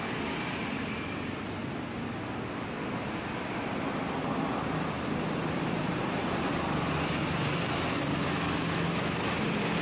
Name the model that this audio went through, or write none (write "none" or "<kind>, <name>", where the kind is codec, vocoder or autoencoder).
none